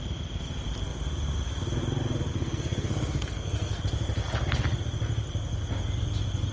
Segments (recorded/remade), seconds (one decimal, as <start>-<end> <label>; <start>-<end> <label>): 0.0-2.3 recorded; 2.3-3.8 remade; 3.8-6.5 recorded

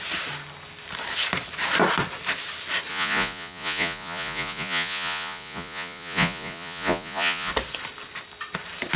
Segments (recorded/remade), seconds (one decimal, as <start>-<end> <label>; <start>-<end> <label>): 0.0-2.9 recorded; 2.9-7.5 remade; 7.5-9.0 recorded

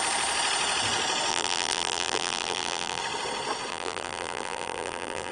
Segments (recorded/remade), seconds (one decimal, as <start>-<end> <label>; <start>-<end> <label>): 0.0-1.3 recorded; 1.3-3.0 remade; 3.0-3.7 recorded; 3.7-5.3 remade